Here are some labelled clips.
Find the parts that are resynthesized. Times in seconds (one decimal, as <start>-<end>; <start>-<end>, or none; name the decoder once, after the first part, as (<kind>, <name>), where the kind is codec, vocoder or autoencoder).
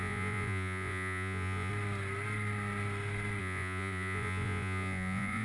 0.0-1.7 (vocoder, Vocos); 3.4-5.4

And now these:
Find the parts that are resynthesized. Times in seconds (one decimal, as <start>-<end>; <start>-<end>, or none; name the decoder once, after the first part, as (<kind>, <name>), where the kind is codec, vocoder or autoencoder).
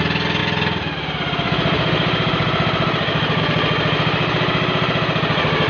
none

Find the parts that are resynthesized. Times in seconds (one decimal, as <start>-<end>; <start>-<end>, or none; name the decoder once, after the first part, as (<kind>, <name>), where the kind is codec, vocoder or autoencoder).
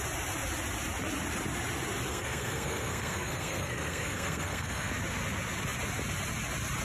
2.1-4.9 (codec, SNAC)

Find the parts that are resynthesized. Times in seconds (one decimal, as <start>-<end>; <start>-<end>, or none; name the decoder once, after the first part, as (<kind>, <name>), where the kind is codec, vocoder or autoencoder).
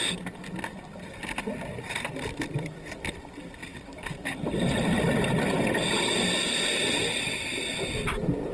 1.7-2.9 (vocoder, BigVGAN v2); 3.6-4.7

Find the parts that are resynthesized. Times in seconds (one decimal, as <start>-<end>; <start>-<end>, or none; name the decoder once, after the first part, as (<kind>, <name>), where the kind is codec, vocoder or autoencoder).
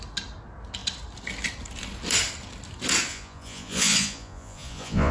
3.1-5.1 (vocoder, Vocos)